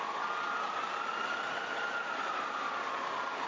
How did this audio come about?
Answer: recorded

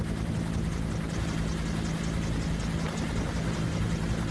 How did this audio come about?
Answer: recorded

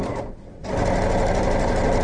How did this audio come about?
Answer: recorded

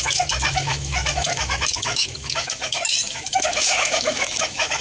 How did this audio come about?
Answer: remade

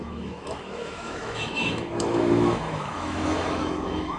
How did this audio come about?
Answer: remade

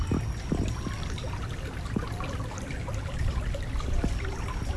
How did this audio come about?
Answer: recorded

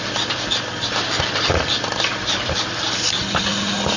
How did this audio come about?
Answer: recorded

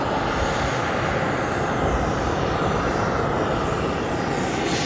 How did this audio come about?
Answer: recorded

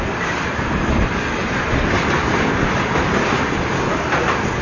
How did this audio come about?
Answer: recorded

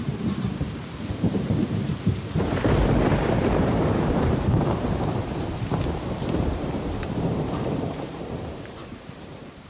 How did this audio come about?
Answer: remade